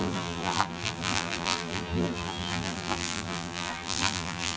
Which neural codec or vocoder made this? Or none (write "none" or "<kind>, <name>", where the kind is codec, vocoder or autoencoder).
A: vocoder, BigVGAN v2